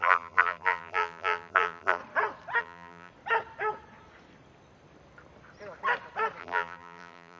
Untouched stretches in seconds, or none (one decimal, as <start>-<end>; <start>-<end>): 2.0-2.6; 3.1-6.4